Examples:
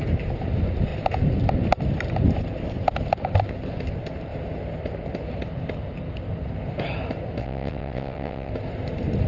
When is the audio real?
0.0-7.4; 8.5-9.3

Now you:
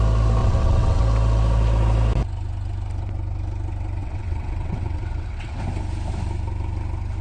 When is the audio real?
0.0-0.4; 1.0-4.0; 5.6-7.2